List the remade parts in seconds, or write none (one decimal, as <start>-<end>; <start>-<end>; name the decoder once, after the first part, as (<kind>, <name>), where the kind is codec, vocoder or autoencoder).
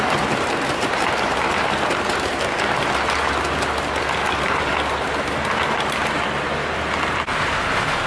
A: 0.0-2.3 (vocoder, BigVGAN v2); 4.3-8.1